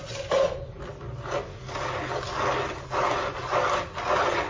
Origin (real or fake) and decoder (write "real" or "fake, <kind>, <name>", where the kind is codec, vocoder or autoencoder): real